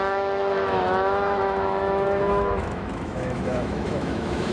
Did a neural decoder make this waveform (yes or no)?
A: yes